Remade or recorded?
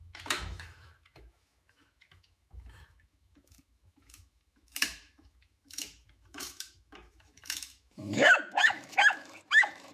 remade